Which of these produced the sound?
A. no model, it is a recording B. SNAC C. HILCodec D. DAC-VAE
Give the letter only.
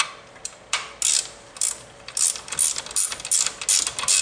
A